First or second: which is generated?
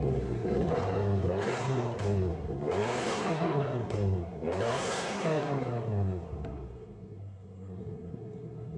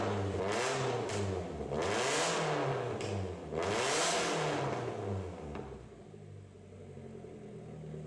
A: first